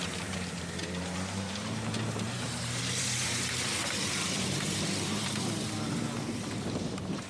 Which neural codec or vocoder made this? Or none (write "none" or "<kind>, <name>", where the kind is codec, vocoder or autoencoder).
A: vocoder, BigVGAN v2